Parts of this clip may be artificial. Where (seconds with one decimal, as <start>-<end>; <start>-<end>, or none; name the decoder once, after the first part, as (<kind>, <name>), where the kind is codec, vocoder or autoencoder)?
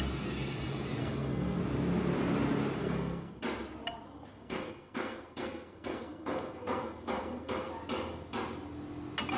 1.0-1.6 (codec, SNAC); 2.8-3.4; 4.3-7.7